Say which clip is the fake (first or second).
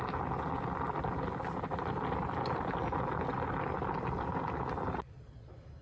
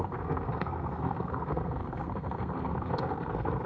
second